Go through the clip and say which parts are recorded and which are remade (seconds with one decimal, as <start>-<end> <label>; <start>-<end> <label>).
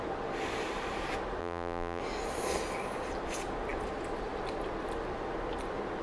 0.0-1.4 recorded; 1.4-2.0 remade; 2.0-6.0 recorded